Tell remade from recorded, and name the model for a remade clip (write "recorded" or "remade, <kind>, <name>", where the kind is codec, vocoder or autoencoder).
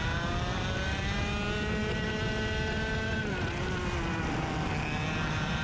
recorded